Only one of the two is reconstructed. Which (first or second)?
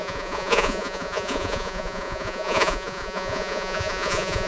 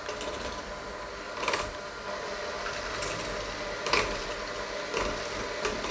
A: first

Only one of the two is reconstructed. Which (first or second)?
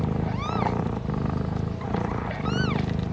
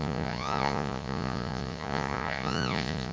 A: second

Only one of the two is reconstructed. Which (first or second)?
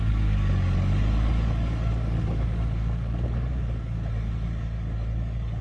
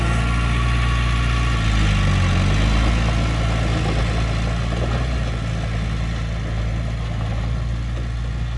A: first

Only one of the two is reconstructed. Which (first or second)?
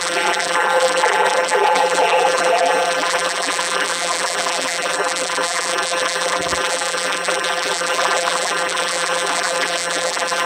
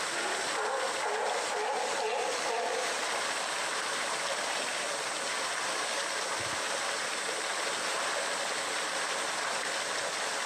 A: first